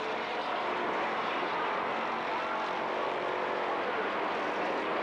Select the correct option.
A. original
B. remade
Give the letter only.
A